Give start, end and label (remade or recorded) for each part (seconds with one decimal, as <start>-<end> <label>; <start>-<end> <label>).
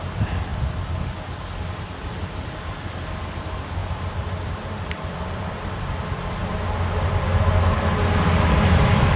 0.0-0.5 recorded; 0.5-2.1 remade; 2.1-3.8 recorded; 3.8-5.2 remade; 5.2-9.2 recorded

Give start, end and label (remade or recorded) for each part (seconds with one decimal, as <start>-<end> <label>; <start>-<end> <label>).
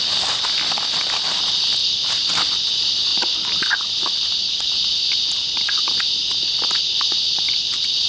0.0-1.8 recorded; 1.8-2.4 remade; 2.4-8.1 recorded